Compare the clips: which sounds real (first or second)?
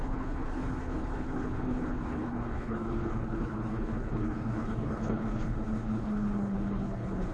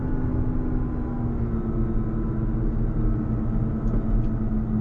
second